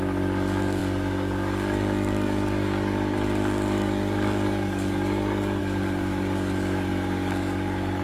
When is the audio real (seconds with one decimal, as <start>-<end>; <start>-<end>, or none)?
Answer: none